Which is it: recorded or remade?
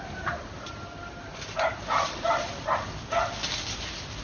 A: recorded